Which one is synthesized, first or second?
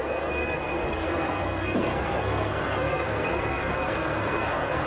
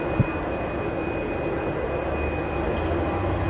first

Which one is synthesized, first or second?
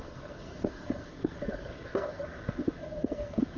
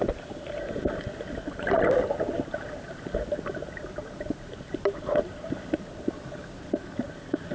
first